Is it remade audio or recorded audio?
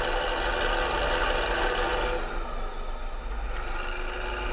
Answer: recorded